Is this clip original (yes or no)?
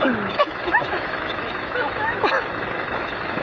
no